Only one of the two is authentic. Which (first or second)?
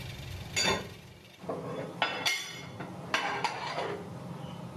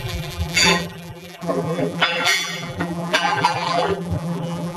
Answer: first